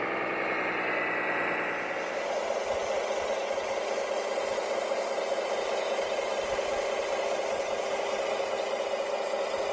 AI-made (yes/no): no